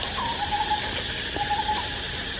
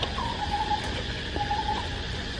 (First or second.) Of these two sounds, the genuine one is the first